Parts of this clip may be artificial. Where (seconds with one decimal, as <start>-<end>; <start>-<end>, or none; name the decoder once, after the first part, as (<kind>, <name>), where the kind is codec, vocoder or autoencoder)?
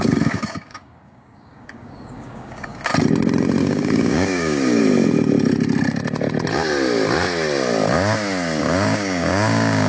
0.0-2.9 (codec, DAC); 3.6-4.8; 8.6-9.9